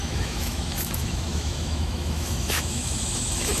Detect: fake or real fake